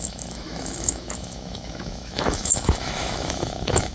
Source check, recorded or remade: remade